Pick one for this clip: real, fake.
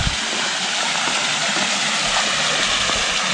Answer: real